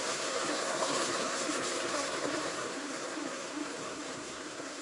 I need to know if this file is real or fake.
fake